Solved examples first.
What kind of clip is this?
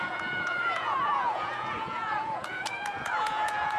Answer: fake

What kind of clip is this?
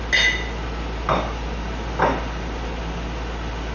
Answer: real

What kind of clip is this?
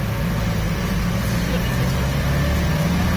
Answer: real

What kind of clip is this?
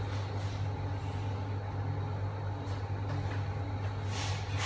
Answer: real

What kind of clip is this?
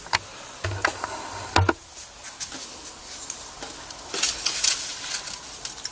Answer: real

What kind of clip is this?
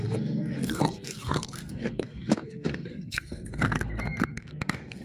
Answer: fake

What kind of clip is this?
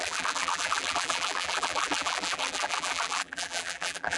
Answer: fake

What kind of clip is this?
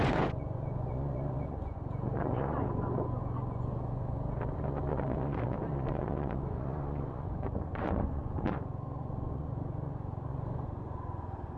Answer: fake